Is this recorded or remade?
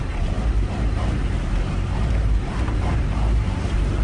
remade